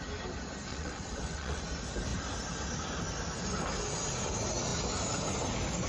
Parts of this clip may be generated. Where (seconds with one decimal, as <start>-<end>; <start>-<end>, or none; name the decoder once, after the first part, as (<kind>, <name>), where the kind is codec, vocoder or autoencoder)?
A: 0.7-1.6 (vocoder, WaveNeXt)

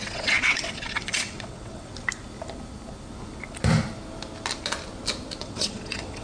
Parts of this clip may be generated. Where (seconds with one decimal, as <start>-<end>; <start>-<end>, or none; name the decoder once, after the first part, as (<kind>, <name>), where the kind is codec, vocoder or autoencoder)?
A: 0.0-1.9 (vocoder, WaveNeXt); 5.4-6.2

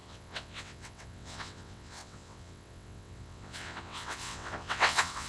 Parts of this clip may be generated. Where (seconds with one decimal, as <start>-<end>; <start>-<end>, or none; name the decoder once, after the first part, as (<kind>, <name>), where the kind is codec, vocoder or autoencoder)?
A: 0.0-5.3 (vocoder, WaveNeXt)

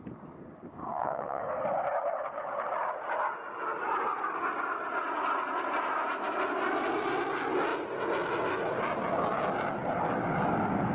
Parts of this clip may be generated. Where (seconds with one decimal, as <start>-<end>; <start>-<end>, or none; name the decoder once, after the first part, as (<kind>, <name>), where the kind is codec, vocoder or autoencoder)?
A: 0.9-1.4 (vocoder, WaveNeXt)

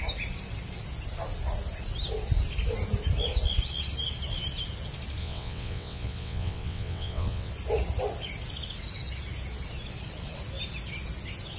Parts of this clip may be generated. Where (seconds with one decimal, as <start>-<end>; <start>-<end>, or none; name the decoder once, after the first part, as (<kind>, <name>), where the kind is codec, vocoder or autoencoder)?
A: 5.2-7.5 (vocoder, WaveNeXt)

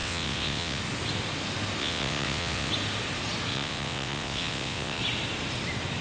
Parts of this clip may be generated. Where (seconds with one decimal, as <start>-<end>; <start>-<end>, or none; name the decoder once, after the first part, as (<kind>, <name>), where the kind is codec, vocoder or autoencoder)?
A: 0.0-0.8 (vocoder, WaveNeXt); 1.8-2.7; 3.5-5.0

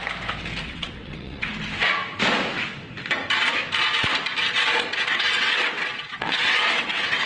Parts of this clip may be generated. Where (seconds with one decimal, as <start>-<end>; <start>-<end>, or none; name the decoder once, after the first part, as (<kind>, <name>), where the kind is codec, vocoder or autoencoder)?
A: 0.6-1.5 (vocoder, WaveNeXt); 4.9-7.3

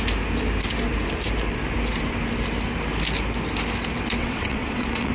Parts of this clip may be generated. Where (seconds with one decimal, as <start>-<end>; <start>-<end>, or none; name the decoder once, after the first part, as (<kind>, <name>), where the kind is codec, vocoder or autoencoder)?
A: 4.2-5.1 (vocoder, WaveNeXt)